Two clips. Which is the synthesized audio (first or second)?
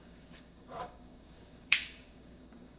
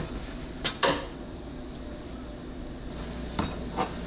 first